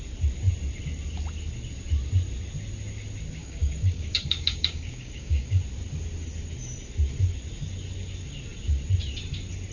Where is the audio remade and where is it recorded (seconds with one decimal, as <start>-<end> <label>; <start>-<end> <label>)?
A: 0.0-3.4 recorded; 3.4-5.6 remade; 5.6-9.7 recorded